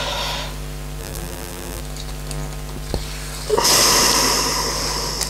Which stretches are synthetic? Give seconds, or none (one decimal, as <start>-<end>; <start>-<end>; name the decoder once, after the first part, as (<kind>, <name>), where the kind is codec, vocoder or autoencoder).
1.0-1.8 (vocoder, BigVGAN v2)